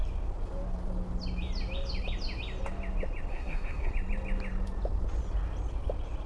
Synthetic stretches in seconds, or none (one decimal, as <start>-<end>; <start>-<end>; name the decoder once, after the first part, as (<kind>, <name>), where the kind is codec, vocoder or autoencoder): 3.3-3.9 (codec, SNAC)